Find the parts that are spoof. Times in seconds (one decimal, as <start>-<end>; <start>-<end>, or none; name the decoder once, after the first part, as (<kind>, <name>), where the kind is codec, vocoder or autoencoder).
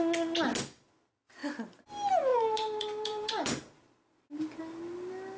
2.3-4.6 (vocoder, BigVGAN v2)